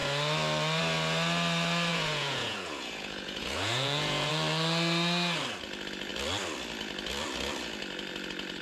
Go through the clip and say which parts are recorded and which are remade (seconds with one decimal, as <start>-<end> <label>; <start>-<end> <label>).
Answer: 0.0-1.9 recorded; 1.9-4.3 remade; 4.3-8.6 recorded